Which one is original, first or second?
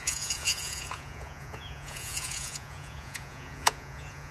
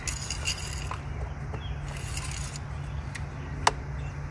second